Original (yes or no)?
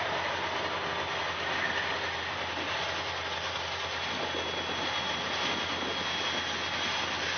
yes